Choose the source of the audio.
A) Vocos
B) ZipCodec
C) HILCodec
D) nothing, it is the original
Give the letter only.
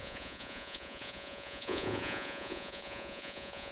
A